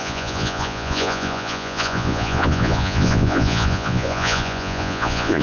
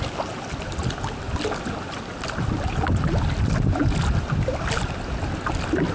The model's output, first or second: first